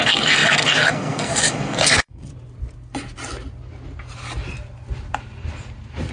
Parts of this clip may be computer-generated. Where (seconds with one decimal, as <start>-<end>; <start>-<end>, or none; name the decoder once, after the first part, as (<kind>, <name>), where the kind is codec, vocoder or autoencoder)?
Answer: 0.0-2.3 (codec, SNAC)